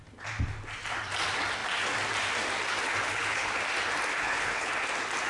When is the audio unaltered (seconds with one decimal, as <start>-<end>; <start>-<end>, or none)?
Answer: 0.0-3.0; 3.6-4.1; 4.7-5.3